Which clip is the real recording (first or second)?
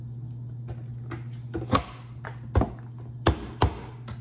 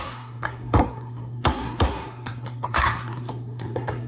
first